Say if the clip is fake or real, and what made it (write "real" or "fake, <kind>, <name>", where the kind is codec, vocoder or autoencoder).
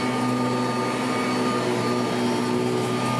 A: real